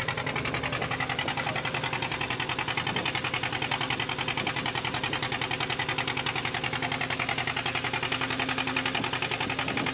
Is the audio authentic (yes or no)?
yes